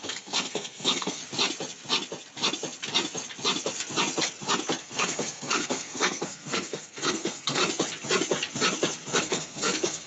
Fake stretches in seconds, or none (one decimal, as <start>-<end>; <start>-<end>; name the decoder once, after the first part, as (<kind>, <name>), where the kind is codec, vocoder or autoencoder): 0.0-1.2 (codec, SNAC); 4.8-7.6; 9.2-10.1